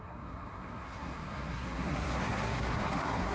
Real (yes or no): no